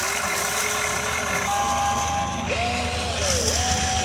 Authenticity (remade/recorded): recorded